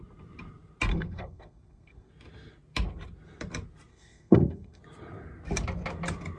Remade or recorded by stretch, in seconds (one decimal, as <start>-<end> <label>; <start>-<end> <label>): 0.0-0.9 recorded; 0.9-2.1 remade; 2.1-3.9 recorded; 3.9-4.8 remade; 4.8-6.4 recorded